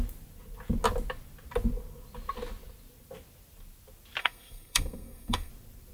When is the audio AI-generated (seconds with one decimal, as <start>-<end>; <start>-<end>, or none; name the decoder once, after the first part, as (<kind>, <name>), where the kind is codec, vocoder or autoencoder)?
4.2-5.5 (codec, SNAC)